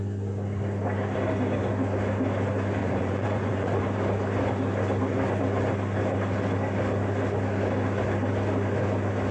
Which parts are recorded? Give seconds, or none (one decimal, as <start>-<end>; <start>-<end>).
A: 0.0-2.8; 3.8-9.3